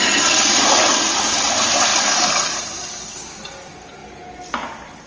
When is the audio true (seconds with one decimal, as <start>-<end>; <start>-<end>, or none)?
0.0-5.1

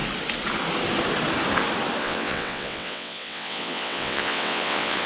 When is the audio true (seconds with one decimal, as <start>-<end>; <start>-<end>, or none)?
0.0-2.0